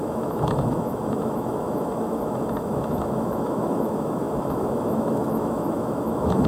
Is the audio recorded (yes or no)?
no